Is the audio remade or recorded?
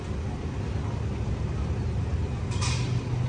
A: recorded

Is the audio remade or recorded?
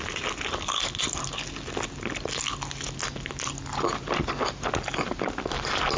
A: recorded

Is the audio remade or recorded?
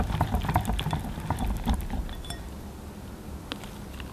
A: recorded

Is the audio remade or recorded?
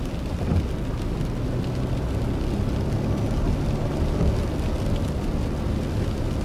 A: recorded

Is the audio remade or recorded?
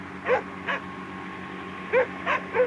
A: recorded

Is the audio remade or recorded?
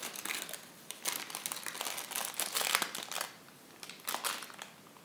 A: recorded